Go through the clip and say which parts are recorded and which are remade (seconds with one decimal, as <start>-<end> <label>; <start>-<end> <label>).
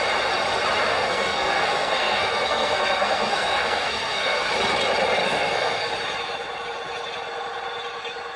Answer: 0.0-0.9 recorded; 0.9-4.5 remade; 4.5-5.2 recorded; 5.2-5.9 remade; 5.9-8.4 recorded